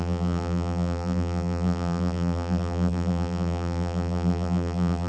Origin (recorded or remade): remade